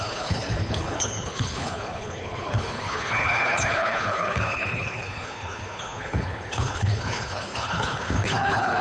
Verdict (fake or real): fake